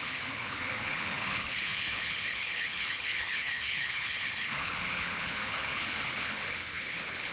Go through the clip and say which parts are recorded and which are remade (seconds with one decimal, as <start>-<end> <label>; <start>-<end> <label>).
0.0-7.3 remade